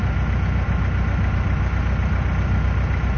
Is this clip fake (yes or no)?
no